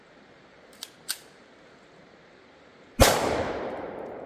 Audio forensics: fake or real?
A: fake